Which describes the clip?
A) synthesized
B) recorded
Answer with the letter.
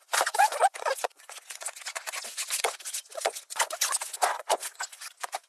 A